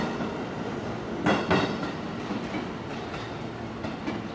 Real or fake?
real